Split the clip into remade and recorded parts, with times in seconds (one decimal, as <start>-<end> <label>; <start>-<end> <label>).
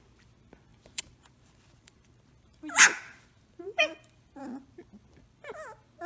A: 0.0-0.7 recorded; 0.7-4.4 remade; 4.4-6.1 recorded